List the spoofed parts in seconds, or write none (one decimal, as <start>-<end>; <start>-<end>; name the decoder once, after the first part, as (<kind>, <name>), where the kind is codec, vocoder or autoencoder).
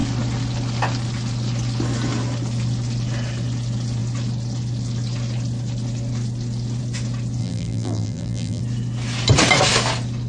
7.4-8.6 (vocoder, BigVGAN v2)